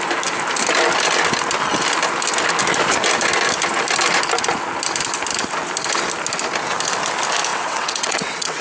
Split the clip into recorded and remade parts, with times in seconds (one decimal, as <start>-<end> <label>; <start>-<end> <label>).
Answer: 0.0-7.5 recorded; 7.5-8.6 remade